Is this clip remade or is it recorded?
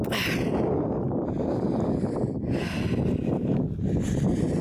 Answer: recorded